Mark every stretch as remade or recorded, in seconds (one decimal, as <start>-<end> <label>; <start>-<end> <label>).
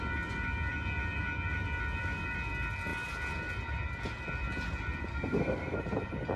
0.0-5.1 recorded; 5.1-5.8 remade; 5.8-6.4 recorded